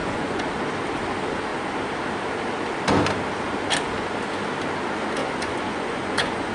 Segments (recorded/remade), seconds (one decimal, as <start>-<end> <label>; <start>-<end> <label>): 0.0-0.5 remade; 0.5-5.2 recorded; 5.2-6.5 remade